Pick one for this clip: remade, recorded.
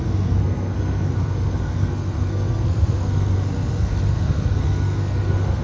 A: remade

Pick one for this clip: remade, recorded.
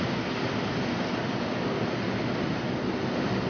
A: recorded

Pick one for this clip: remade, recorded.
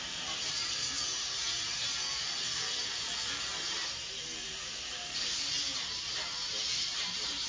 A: remade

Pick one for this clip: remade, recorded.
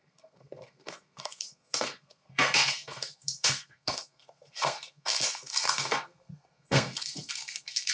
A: remade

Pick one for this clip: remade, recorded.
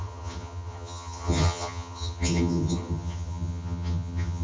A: remade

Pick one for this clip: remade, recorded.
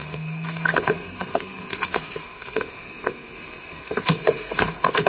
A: remade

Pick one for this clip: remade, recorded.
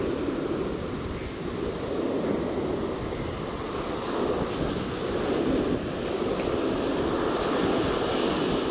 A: recorded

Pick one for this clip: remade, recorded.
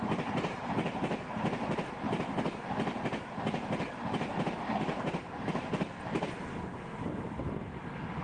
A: recorded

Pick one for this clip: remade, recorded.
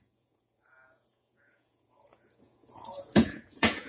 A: remade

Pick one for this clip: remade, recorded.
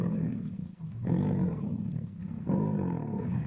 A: remade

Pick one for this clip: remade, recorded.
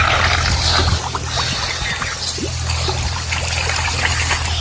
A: recorded